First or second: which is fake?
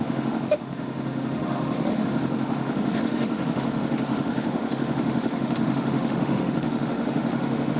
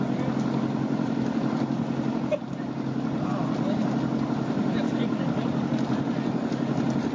first